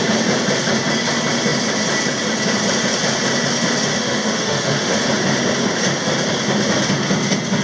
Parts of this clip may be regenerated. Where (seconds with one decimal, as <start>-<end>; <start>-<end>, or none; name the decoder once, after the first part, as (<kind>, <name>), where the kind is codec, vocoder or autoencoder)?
3.9-5.1 (autoencoder, DAC-VAE)